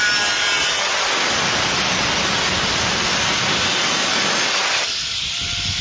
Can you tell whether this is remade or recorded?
recorded